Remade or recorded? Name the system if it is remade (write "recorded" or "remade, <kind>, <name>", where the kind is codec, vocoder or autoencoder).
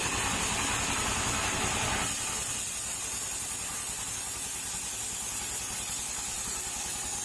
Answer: recorded